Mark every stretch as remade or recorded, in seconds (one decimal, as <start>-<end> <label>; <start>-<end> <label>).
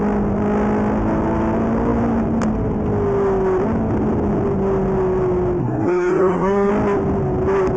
0.0-5.6 recorded; 5.6-6.7 remade; 6.7-7.8 recorded